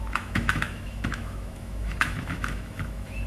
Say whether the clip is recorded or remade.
remade